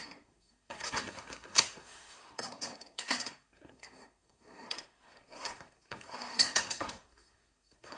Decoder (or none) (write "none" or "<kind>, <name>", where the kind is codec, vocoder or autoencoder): codec, SNAC